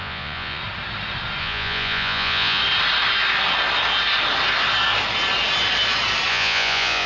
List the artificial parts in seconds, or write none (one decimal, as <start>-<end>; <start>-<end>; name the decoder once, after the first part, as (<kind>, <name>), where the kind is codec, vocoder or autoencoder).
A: 0.0-0.6 (vocoder, Vocos); 1.4-2.6; 6.3-7.1